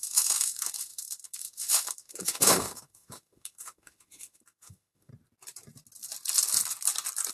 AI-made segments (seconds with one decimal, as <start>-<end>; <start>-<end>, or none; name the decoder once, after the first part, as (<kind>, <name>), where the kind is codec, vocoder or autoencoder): 0.0-5.1 (autoencoder, DAC-VAE)